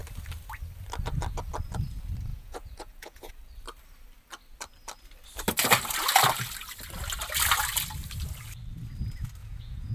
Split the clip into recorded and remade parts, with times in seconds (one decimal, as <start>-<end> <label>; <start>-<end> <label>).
0.0-2.3 recorded; 2.3-3.3 remade; 3.3-9.4 recorded; 9.4-9.9 remade